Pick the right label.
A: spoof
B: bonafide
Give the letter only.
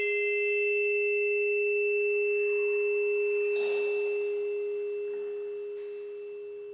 B